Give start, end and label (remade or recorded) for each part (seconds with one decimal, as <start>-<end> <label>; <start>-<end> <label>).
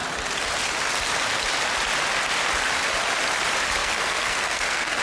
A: 0.0-3.8 recorded; 3.8-5.0 remade